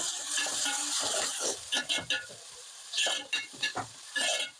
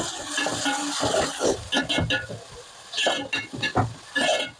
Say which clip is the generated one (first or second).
first